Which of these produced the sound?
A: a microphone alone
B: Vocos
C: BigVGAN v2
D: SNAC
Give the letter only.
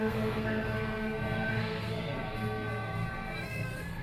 D